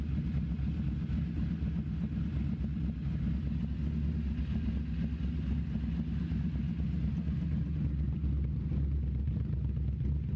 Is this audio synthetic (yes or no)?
no